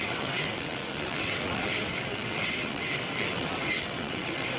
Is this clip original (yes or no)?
no